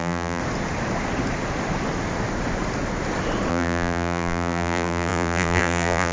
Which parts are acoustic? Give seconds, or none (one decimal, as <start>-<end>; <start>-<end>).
0.4-3.5